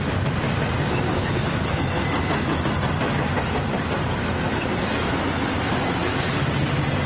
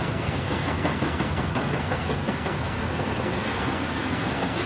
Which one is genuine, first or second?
first